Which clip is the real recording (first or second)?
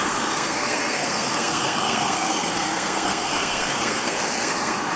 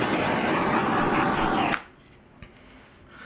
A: second